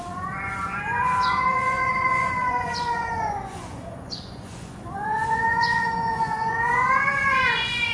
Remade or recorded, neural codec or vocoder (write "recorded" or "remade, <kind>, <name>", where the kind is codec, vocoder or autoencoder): remade, vocoder, Vocos